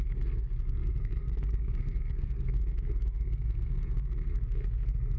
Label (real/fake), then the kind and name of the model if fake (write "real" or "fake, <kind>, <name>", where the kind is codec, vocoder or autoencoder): fake, codec, SNAC